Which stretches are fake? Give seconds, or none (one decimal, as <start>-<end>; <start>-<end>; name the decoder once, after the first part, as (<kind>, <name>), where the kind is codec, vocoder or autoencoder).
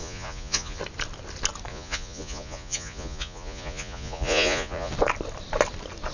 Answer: 0.0-0.8 (vocoder, Vocos); 1.7-4.9